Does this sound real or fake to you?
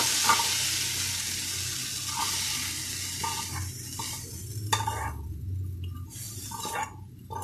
real